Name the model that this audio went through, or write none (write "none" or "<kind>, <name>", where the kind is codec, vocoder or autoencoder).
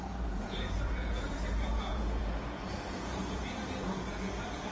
vocoder, Vocos